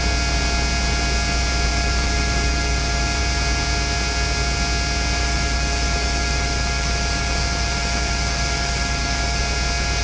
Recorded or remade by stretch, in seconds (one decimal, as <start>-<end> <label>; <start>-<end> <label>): 0.0-1.7 recorded; 1.7-3.2 remade; 3.2-5.2 recorded; 5.2-9.4 remade; 9.4-10.0 recorded